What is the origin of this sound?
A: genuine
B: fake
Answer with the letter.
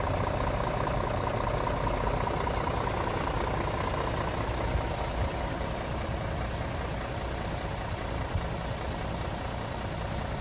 A